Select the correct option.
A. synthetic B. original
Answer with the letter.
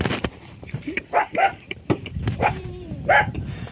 A